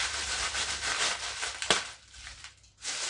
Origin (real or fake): real